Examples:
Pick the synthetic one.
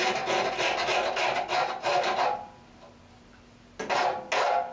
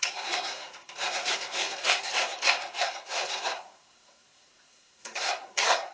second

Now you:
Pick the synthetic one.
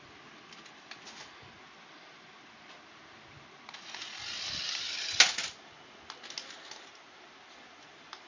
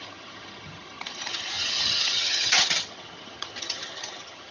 second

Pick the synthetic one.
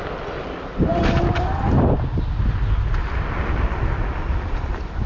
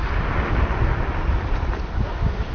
second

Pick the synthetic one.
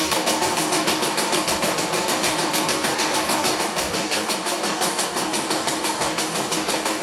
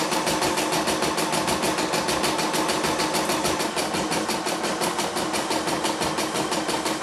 first